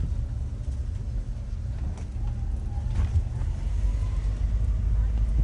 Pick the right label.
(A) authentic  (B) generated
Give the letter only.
A